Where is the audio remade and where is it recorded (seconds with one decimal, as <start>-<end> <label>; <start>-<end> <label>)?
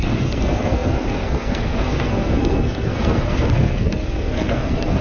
0.0-5.0 remade